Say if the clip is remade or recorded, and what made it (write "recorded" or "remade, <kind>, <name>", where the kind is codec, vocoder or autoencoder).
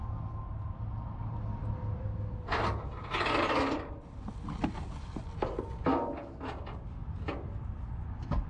recorded